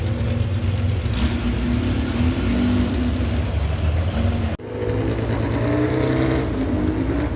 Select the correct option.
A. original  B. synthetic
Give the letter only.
A